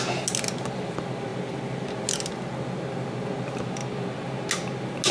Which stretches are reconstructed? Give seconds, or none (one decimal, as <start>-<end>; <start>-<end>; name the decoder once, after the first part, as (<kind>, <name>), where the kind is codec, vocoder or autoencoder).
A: none